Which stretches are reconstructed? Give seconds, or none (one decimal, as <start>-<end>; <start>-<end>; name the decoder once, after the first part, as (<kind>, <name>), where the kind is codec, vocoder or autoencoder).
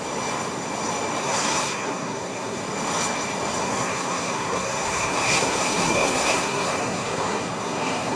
1.2-2.6 (codec, SNAC); 3.6-8.2